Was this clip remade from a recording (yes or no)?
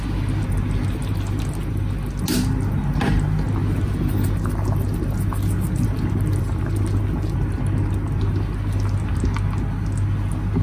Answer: no